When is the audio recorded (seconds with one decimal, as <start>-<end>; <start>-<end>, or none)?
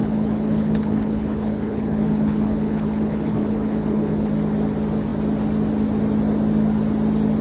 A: 4.3-7.4